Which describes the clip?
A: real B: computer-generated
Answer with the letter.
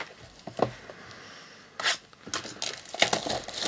A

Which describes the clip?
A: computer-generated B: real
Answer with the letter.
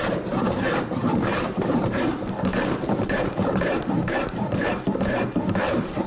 A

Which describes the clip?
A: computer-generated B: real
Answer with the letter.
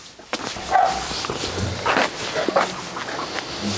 B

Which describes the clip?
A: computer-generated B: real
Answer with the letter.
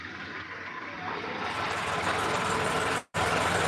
A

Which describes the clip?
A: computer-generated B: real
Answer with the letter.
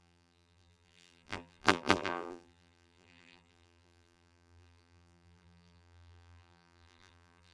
A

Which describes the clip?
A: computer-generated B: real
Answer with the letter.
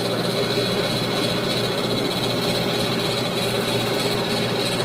B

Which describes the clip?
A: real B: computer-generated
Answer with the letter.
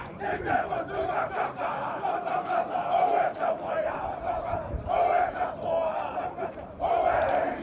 B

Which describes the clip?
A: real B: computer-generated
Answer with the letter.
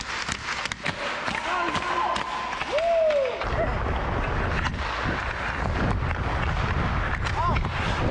A